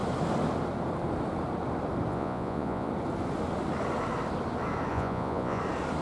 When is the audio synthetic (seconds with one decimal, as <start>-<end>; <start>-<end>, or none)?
2.1-2.9; 4.9-5.6

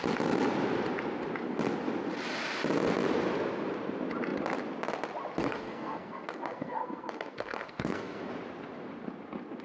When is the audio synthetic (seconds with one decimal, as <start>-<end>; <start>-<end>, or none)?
5.4-8.3